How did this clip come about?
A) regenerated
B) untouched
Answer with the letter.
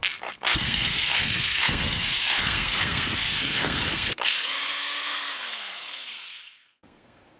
A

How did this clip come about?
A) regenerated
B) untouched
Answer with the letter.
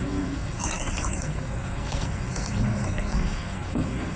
A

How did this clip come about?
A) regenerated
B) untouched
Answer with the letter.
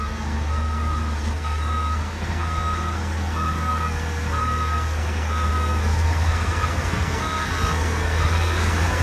A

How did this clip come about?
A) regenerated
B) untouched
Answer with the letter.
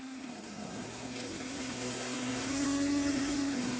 A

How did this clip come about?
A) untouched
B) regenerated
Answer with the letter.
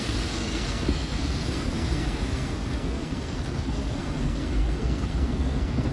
B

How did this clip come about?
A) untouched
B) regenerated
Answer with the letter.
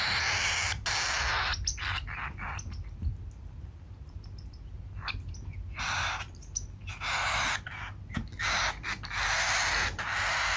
A